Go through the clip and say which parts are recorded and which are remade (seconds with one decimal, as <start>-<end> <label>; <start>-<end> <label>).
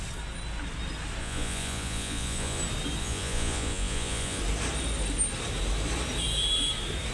0.0-1.2 recorded; 1.2-2.6 remade; 2.6-3.0 recorded; 3.0-4.4 remade; 4.4-7.1 recorded